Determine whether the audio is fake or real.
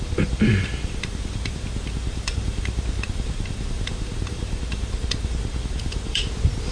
fake